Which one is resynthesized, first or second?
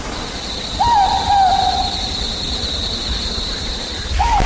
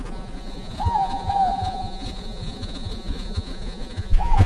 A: second